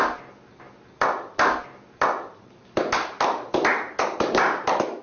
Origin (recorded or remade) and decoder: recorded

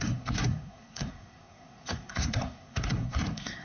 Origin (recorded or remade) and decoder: remade, codec, SNAC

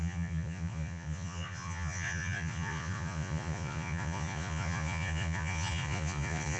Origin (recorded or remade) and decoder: remade, vocoder, Vocos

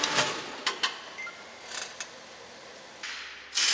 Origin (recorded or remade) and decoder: recorded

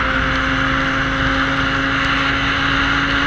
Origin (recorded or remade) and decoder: recorded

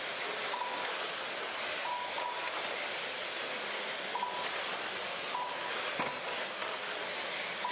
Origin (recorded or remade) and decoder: recorded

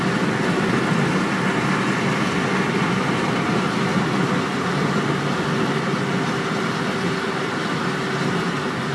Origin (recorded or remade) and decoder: recorded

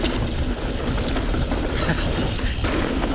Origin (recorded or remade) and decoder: recorded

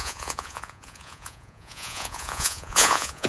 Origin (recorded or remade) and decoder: remade, vocoder, Vocos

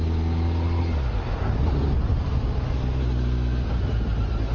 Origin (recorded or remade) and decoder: recorded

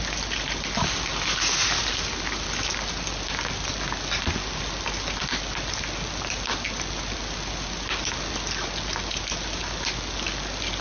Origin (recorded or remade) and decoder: recorded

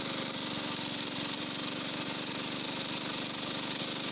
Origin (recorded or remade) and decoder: recorded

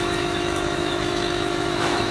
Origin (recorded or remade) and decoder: remade, autoencoder, DAC-VAE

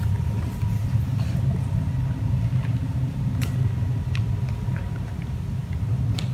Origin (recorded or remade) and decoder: recorded